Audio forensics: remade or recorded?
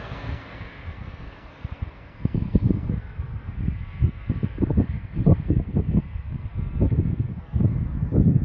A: remade